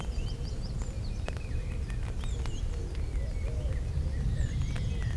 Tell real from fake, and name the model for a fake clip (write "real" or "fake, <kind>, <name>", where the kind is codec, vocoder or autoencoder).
real